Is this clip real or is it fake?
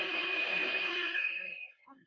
fake